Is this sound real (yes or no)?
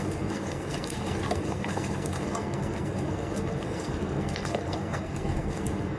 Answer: no